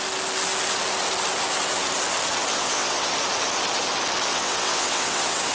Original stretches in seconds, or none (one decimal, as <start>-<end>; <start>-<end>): 0.0-2.5; 3.1-4.3